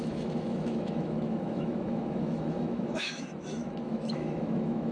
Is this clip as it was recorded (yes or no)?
no